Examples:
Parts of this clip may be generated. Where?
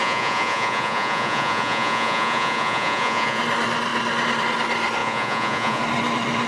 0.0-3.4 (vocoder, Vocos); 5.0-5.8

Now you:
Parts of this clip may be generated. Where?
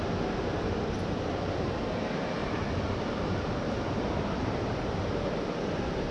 2.4-5.6 (vocoder, BigVGAN v2)